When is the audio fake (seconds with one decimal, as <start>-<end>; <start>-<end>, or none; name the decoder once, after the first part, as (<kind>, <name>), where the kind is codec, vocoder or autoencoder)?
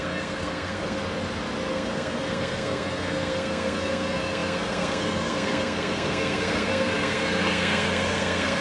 0.0-1.0 (codec, SNAC); 1.7-8.6